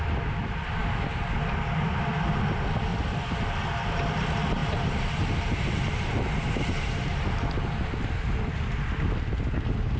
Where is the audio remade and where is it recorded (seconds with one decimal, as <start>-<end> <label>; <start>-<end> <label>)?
0.0-2.9 recorded; 2.9-3.4 remade; 3.4-4.6 recorded; 4.6-7.2 remade; 7.2-10.0 recorded